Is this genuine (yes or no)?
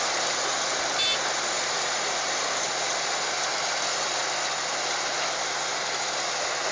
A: yes